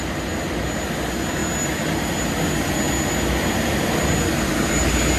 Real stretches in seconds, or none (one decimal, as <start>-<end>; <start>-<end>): 0.0-5.2